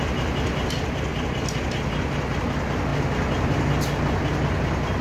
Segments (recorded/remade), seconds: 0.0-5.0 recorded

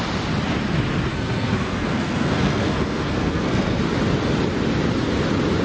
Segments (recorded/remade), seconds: 0.0-1.1 recorded; 1.1-3.8 remade; 3.8-5.6 recorded

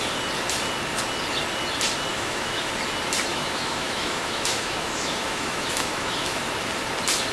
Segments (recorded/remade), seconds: 0.0-2.1 recorded; 2.1-2.7 remade; 2.7-3.3 recorded; 3.3-6.4 remade; 6.4-7.3 recorded

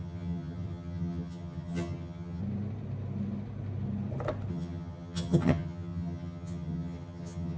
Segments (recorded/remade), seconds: 0.0-2.4 remade; 2.4-4.5 recorded; 4.5-7.6 remade

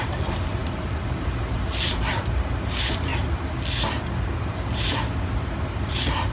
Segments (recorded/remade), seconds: 0.0-3.1 remade; 3.1-4.4 recorded; 4.4-6.3 remade

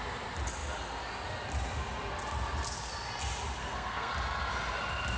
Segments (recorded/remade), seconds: 0.0-3.6 recorded; 3.6-4.1 remade; 4.1-5.2 recorded

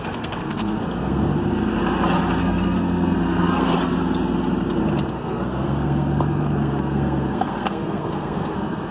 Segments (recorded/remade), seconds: 0.0-1.3 remade; 1.3-2.4 recorded; 2.4-3.7 remade; 3.7-5.1 recorded; 5.1-8.9 remade